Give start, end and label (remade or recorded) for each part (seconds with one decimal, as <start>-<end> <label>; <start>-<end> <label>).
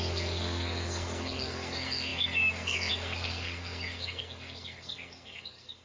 0.0-5.8 remade